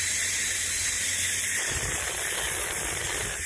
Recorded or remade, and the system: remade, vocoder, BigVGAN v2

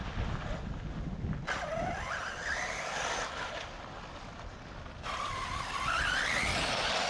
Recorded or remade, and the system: recorded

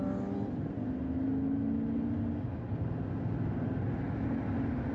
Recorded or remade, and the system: recorded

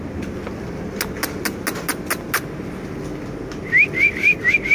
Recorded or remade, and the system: recorded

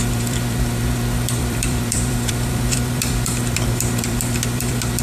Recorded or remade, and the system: remade, vocoder, BigVGAN v2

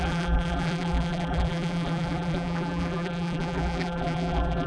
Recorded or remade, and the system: remade, vocoder, BigVGAN v2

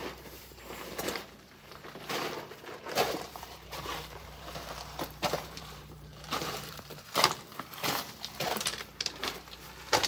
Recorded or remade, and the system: remade, vocoder, BigVGAN v2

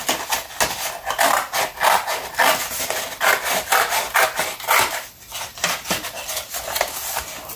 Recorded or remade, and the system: recorded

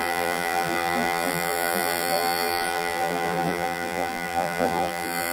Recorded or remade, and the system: remade, vocoder, BigVGAN v2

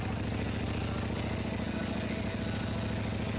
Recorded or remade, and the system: recorded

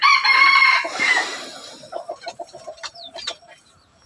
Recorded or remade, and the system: remade, vocoder, BigVGAN v2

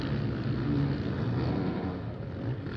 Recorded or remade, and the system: recorded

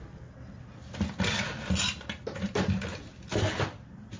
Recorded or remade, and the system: recorded